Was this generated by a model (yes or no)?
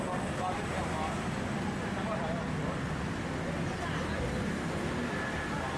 no